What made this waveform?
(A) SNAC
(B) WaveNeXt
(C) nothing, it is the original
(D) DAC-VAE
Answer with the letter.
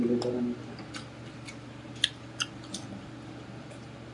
C